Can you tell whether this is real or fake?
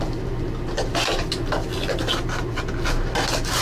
real